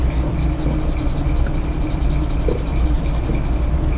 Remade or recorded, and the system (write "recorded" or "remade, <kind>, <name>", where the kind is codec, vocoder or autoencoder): recorded